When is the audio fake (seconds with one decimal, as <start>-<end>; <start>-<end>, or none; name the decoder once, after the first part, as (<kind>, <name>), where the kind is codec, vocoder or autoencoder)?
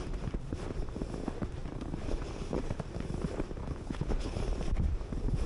3.6-4.4 (codec, HILCodec)